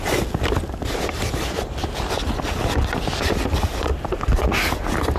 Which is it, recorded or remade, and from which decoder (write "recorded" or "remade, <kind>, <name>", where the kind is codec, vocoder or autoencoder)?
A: recorded